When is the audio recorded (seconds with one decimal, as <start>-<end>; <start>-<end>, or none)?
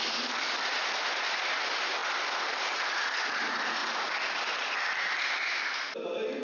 0.0-6.4